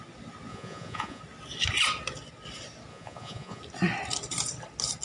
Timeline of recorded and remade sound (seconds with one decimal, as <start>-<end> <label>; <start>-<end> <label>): 0.0-0.5 recorded; 0.5-1.2 remade; 1.2-2.9 recorded; 2.9-3.6 remade; 3.6-5.0 recorded